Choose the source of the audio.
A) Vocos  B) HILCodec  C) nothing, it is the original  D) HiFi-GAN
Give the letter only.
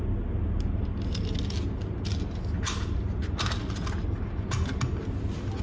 C